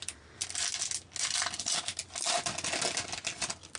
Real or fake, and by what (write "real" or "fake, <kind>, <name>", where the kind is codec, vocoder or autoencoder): real